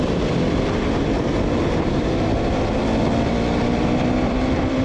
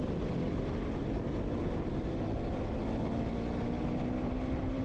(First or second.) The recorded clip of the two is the second